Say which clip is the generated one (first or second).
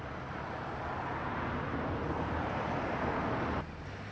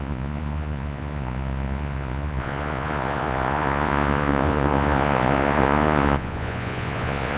second